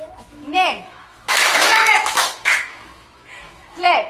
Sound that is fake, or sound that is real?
fake